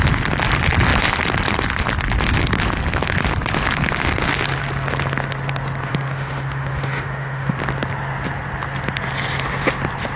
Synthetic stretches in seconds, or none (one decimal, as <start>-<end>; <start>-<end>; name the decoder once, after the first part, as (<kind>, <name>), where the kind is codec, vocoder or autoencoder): 5.9-7.6 (autoencoder, DAC-VAE)